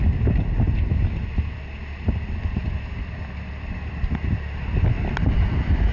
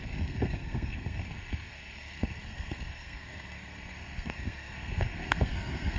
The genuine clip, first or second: first